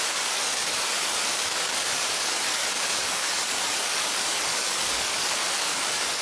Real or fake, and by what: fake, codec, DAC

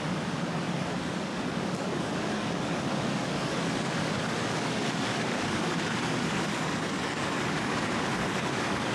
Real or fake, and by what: fake, codec, DAC